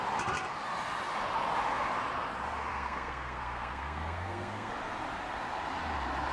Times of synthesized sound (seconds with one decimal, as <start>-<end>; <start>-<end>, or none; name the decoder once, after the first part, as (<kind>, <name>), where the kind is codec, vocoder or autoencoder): 2.7-4.7 (codec, SNAC)